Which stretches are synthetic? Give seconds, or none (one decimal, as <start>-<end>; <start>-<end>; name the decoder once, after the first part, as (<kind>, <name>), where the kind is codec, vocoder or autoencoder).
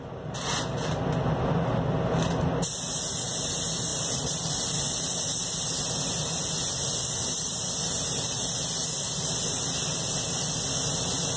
3.9-5.8 (vocoder, BigVGAN v2)